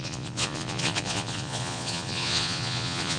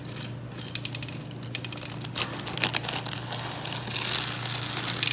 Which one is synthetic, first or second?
first